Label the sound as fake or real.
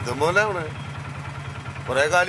real